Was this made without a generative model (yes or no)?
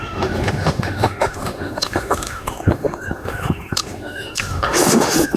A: no